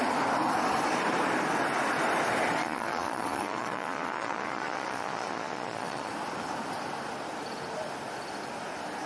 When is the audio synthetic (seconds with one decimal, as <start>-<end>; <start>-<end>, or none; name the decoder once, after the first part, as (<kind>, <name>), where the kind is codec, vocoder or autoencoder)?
2.6-6.1 (vocoder, Vocos)